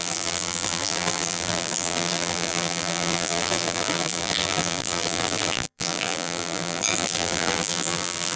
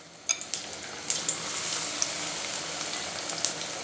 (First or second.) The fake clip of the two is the first